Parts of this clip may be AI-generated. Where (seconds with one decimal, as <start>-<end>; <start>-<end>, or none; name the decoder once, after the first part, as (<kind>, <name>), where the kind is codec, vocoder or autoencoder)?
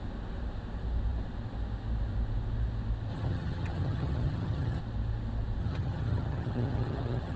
3.1-4.8 (vocoder, HiFi-GAN); 5.6-7.4